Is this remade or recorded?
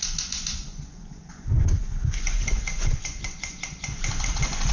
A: remade